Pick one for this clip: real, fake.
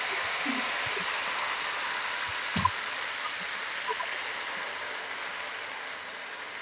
real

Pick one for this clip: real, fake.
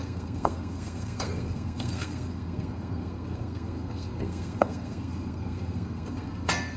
fake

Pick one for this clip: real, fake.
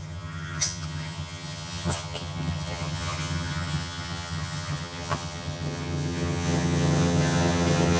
fake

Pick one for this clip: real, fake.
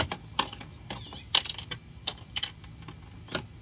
real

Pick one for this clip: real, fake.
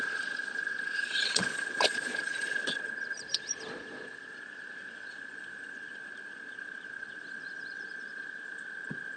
fake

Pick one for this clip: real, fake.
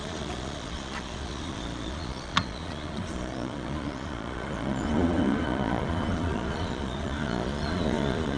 fake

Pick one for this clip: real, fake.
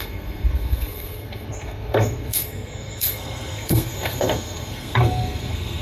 fake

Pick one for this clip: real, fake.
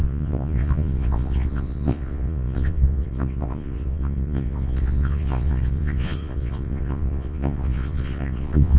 fake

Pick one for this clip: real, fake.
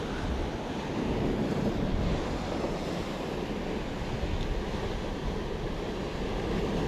real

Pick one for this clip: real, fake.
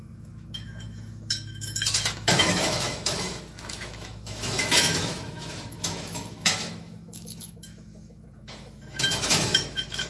fake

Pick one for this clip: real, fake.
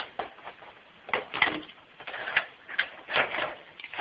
real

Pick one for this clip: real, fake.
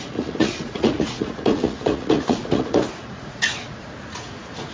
fake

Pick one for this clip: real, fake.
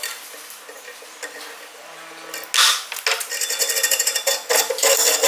real